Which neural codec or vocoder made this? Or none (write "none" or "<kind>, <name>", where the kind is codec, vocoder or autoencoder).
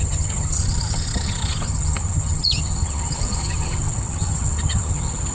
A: vocoder, HiFi-GAN